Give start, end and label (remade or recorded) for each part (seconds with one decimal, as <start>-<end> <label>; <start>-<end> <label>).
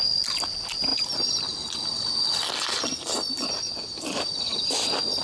0.0-5.2 recorded